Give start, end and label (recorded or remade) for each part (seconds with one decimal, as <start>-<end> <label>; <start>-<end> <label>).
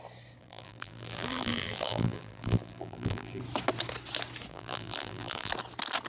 0.0-0.4 recorded; 0.4-3.4 remade; 3.4-4.5 recorded; 4.5-5.5 remade; 5.5-6.1 recorded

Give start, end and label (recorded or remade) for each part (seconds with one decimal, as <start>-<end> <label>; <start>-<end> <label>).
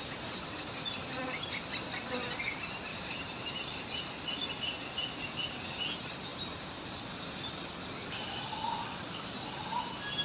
0.0-2.9 recorded; 2.9-4.1 remade; 4.1-6.3 recorded; 6.3-6.8 remade; 6.8-10.2 recorded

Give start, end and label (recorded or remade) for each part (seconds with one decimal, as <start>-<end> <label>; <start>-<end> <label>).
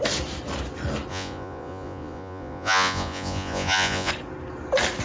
0.0-1.1 recorded; 1.1-4.1 remade; 4.1-5.0 recorded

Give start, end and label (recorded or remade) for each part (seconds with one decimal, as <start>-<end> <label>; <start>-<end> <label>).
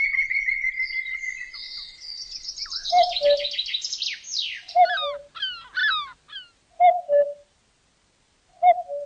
0.0-9.1 recorded